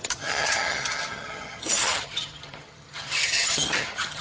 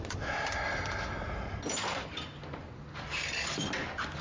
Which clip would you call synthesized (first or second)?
first